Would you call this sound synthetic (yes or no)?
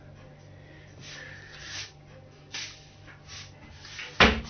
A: no